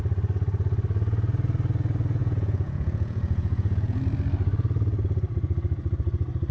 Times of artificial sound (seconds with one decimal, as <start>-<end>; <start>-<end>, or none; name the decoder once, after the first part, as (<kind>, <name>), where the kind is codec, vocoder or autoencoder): 2.2-4.0 (vocoder, Vocos)